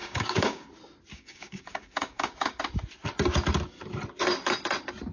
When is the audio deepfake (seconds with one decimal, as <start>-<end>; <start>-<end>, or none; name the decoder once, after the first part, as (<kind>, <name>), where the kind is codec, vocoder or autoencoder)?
0.0-0.7 (codec, DAC); 1.1-2.6